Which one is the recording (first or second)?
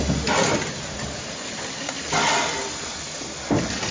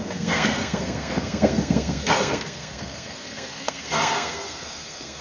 first